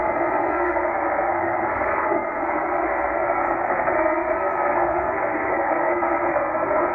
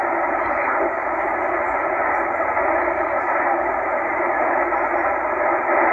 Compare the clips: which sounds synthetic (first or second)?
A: first